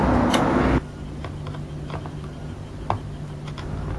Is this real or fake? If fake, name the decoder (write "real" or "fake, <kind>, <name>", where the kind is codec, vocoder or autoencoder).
real